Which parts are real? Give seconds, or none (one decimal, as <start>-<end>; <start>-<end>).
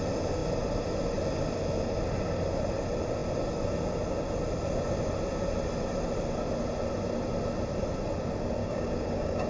0.0-8.6